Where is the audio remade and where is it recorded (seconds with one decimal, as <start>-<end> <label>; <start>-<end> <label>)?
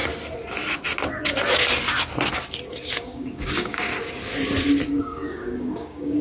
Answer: 0.0-3.0 recorded; 3.0-3.9 remade; 3.9-5.0 recorded; 5.0-6.2 remade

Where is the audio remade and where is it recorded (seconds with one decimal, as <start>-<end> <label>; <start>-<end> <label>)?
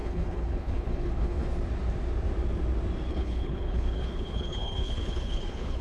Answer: 0.0-1.5 remade; 1.5-3.1 recorded; 3.1-5.8 remade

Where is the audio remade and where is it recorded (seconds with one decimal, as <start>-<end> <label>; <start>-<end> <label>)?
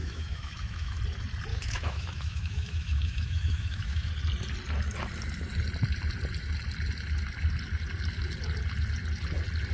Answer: 0.0-1.0 remade; 1.0-1.5 recorded; 1.5-4.1 remade; 4.1-9.7 recorded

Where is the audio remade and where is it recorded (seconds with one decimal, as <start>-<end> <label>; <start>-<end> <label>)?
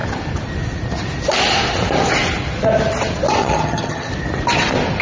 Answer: 0.0-3.4 recorded; 3.4-4.1 remade; 4.1-5.0 recorded